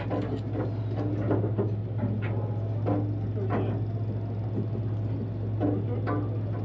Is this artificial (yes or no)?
no